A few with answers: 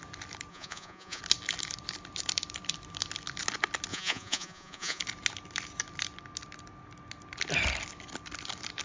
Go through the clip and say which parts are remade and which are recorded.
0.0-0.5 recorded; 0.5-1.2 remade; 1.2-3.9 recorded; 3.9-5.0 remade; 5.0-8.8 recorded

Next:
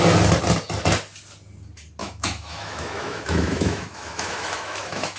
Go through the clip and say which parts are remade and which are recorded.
0.0-2.0 recorded; 2.0-5.2 remade

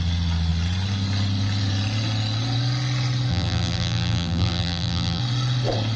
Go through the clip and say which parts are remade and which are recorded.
0.0-3.3 recorded; 3.3-5.2 remade; 5.2-6.0 recorded

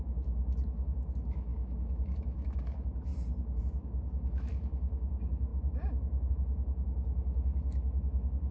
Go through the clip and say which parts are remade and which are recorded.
0.0-3.1 remade; 3.1-3.6 recorded; 3.6-8.5 remade

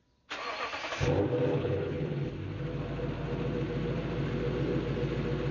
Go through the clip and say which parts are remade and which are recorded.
0.0-1.5 recorded; 1.5-2.3 remade; 2.3-5.5 recorded